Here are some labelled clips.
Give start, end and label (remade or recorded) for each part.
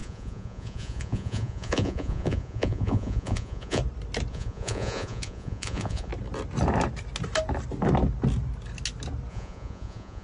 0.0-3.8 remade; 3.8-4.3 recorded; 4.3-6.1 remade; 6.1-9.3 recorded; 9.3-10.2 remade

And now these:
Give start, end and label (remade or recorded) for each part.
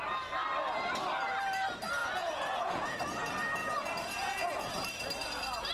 0.0-2.0 recorded; 2.0-3.0 remade; 3.0-3.6 recorded; 3.6-4.7 remade; 4.7-5.7 recorded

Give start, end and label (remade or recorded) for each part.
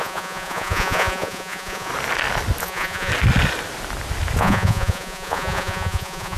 0.0-1.9 remade; 1.9-2.6 recorded; 2.6-3.1 remade; 3.1-4.4 recorded; 4.4-6.4 remade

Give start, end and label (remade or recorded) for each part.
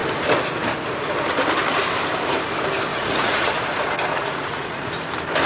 0.0-2.9 recorded; 2.9-3.5 remade; 3.5-4.1 recorded; 4.1-4.9 remade; 4.9-5.5 recorded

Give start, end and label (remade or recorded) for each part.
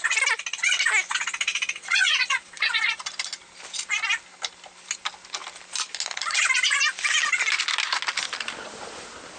0.0-1.5 recorded; 1.5-3.0 remade; 3.0-9.4 recorded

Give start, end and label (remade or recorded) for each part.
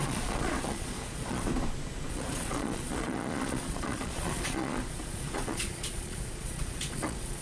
0.0-1.5 remade; 1.5-2.1 recorded; 2.1-7.4 remade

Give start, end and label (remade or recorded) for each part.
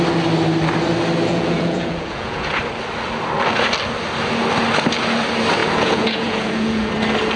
0.0-1.3 recorded; 1.3-2.6 remade; 2.6-5.6 recorded; 5.6-6.9 remade; 6.9-7.4 recorded